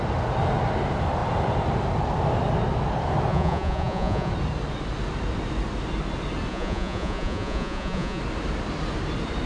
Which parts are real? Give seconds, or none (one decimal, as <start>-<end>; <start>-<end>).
0.0-3.3; 4.3-6.5; 8.2-9.5